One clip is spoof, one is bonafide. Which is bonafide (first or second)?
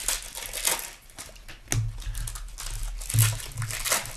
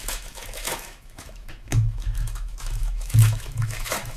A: first